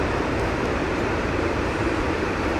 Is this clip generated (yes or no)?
yes